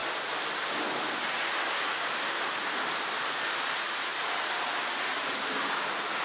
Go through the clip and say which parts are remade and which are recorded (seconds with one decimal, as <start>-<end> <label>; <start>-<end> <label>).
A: 0.0-6.2 recorded